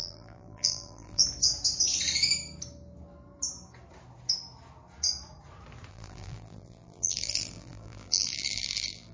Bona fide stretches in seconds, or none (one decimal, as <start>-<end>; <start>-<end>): 1.2-5.9